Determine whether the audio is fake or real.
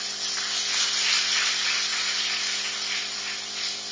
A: real